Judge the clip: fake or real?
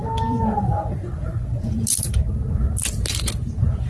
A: fake